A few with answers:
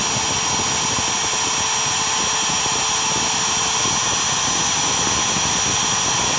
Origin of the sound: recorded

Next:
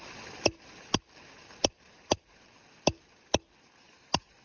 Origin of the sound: recorded